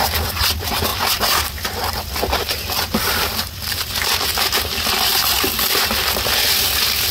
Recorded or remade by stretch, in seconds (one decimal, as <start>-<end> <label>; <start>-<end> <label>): 0.0-7.1 remade